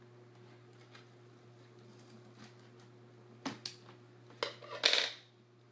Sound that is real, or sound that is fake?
real